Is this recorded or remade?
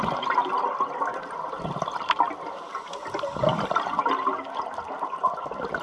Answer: recorded